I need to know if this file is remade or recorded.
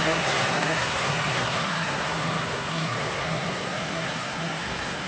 remade